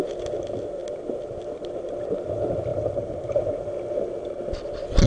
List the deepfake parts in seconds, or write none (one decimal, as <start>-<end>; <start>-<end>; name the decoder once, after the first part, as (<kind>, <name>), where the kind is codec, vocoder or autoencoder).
2.7-3.7 (vocoder, BigVGAN v2)